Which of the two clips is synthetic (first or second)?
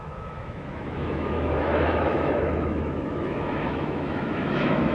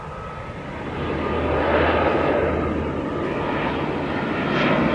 first